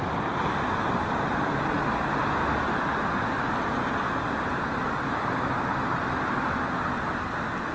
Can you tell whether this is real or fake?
real